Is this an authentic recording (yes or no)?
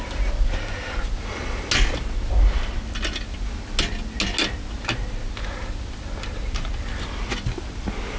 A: yes